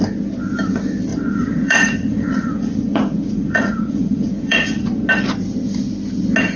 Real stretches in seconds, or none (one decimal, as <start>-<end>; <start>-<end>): 0.0-1.1; 5.1-6.6